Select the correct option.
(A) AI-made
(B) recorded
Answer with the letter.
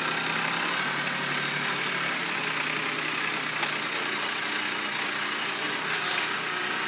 B